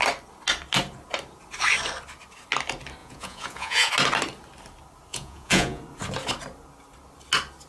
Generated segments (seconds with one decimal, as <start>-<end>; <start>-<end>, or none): 3.0-3.9; 5.1-5.8